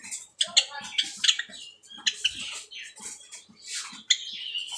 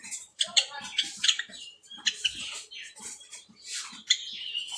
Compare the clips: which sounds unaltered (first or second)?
first